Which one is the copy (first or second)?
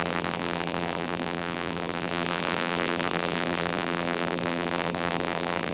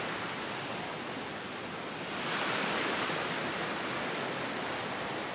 first